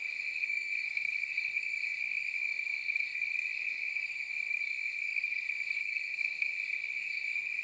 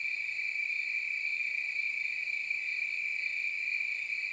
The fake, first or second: first